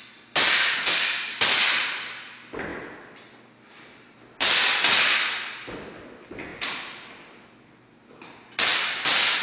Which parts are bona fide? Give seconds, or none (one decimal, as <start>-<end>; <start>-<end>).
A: 0.0-9.4